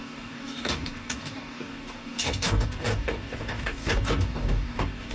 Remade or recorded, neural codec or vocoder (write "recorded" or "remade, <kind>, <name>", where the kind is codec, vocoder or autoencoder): remade, codec, DAC